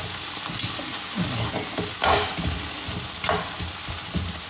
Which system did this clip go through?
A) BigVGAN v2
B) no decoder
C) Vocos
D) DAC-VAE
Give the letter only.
B